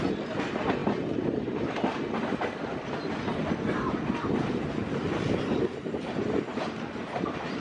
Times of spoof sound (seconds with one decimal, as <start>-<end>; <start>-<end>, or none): none